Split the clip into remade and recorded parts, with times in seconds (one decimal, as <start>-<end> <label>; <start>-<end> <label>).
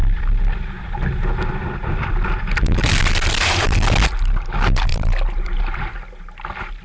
0.0-4.1 remade; 4.1-4.9 recorded; 4.9-6.2 remade; 6.2-6.8 recorded